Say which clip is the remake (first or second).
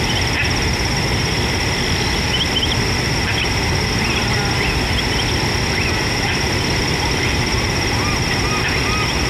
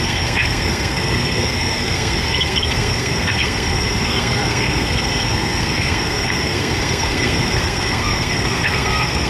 second